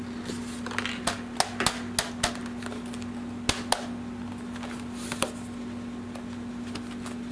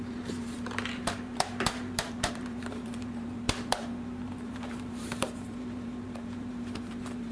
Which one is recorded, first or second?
first